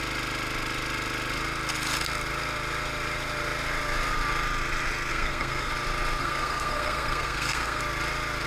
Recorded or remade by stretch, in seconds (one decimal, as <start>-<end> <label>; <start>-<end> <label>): 0.0-5.1 recorded; 5.1-5.7 remade; 5.7-6.2 recorded; 6.2-7.8 remade; 7.8-8.5 recorded